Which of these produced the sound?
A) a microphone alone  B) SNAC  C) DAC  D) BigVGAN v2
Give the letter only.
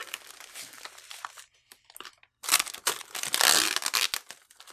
A